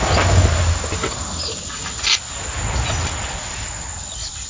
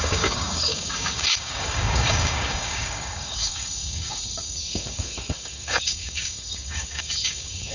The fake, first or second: second